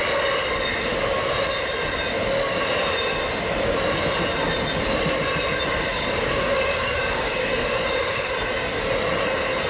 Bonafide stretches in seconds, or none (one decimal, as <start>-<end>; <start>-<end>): 0.0-5.9; 8.3-9.7